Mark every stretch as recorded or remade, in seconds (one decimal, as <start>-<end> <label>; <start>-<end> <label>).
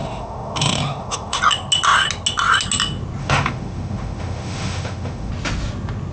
0.0-1.4 remade; 1.4-3.2 recorded; 3.2-5.3 remade; 5.3-6.1 recorded